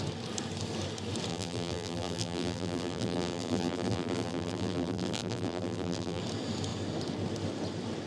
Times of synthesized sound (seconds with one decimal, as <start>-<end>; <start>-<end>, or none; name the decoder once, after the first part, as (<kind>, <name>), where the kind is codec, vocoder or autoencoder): 1.3-6.2 (vocoder, BigVGAN v2)